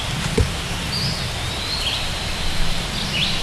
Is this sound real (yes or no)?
yes